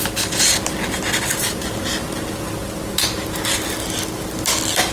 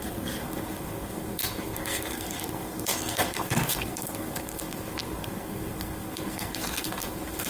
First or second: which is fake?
second